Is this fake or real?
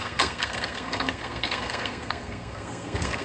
fake